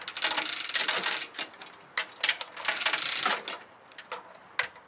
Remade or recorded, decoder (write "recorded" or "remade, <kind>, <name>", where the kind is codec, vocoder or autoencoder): recorded